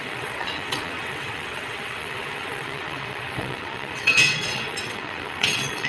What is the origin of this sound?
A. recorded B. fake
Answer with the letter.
B